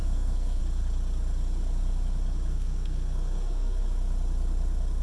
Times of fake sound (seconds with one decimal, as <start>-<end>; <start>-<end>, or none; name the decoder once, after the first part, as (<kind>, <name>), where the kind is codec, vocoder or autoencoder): 0.0-0.6 (codec, SNAC); 2.5-3.8